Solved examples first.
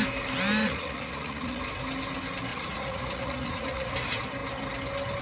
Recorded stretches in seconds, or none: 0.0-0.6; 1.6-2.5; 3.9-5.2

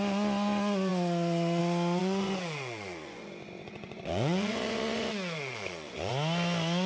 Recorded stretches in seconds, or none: 0.0-2.0; 6.1-6.9

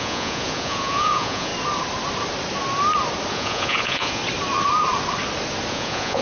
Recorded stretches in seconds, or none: 1.5-3.3; 4.2-5.7

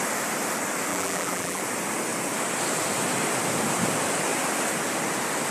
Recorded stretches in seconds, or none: 0.0-0.9; 1.6-5.5